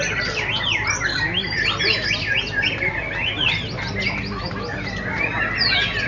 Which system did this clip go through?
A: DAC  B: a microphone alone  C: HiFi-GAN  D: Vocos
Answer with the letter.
B